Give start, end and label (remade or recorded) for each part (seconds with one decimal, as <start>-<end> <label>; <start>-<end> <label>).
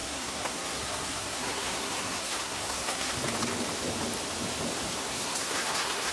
0.0-3.1 remade; 3.1-4.9 recorded; 4.9-6.1 remade